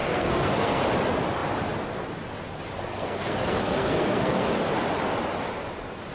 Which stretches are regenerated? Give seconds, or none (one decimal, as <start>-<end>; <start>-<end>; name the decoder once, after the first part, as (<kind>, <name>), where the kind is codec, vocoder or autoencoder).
0.0-0.8 (codec, SNAC); 2.9-4.5